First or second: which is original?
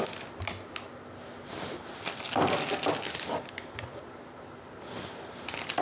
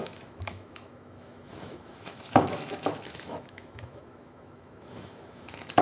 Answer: first